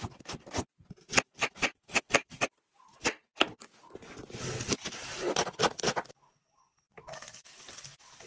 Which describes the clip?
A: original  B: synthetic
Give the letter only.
A